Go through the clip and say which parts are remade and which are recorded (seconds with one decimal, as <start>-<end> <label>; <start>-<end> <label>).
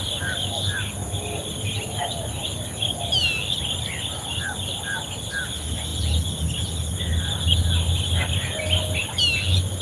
0.0-9.8 recorded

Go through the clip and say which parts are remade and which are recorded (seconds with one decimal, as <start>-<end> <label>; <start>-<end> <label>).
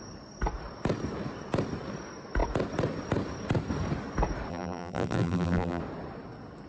0.0-4.5 recorded; 4.5-5.8 remade; 5.8-6.7 recorded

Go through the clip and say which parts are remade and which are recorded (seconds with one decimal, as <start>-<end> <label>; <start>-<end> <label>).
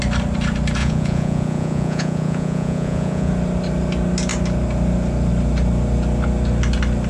0.0-0.8 recorded; 0.8-3.3 remade; 3.3-7.1 recorded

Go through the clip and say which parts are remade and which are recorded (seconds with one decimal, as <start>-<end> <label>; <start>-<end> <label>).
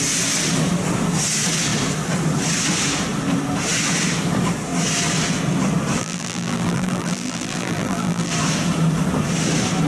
0.0-6.0 recorded; 6.0-8.3 remade; 8.3-9.9 recorded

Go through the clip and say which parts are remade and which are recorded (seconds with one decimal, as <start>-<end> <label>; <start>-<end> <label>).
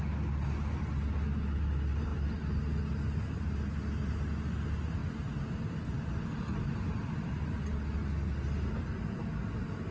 0.0-9.9 recorded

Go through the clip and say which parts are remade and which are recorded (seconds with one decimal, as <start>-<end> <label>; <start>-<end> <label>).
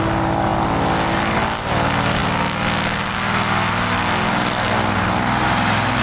0.0-6.0 recorded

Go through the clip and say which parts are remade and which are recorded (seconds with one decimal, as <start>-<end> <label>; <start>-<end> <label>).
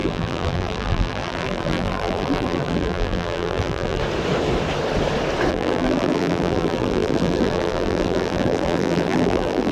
0.0-4.0 remade; 4.0-5.5 recorded; 5.5-9.7 remade